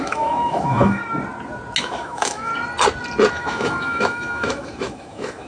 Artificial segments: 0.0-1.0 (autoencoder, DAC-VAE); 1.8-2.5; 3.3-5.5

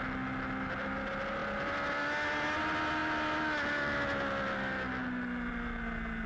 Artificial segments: none

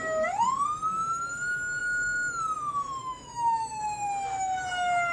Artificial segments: 1.8-2.4 (autoencoder, DAC-VAE); 3.0-3.8